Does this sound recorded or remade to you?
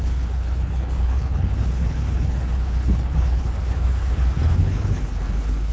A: remade